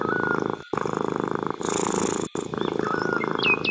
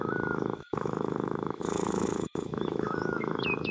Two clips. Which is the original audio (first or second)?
first